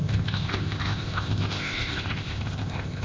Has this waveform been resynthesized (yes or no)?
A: yes